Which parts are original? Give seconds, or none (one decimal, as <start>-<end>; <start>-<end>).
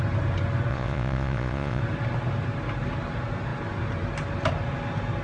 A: 0.0-0.7; 1.8-5.2